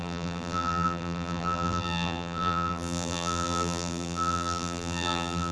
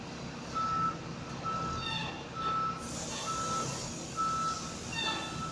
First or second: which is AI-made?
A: first